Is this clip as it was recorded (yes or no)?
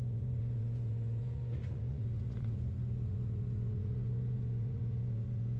no